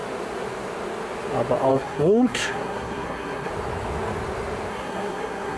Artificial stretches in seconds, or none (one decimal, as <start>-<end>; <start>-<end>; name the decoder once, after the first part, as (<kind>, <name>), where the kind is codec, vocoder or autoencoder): 1.7-3.5 (codec, SNAC); 4.7-5.6